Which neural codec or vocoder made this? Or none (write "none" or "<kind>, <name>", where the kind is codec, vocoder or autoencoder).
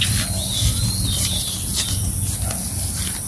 none